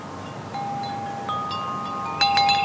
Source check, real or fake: real